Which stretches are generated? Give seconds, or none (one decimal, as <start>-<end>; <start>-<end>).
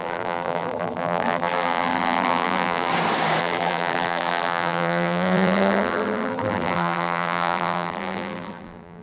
0.0-2.9; 3.4-9.0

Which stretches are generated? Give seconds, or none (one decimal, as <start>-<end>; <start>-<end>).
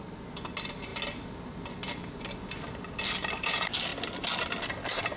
none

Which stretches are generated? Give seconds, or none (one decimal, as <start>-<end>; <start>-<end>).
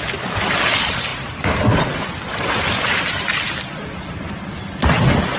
1.1-4.3